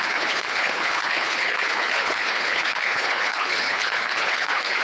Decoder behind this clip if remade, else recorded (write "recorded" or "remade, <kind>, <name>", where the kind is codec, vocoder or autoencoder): remade, codec, HILCodec